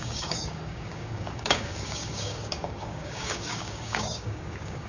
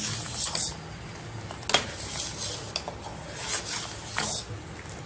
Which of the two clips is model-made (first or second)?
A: first